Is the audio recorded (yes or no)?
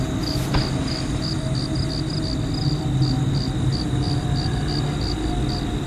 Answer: yes